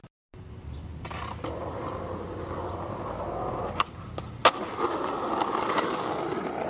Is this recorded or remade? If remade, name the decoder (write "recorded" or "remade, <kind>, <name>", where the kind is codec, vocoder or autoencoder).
recorded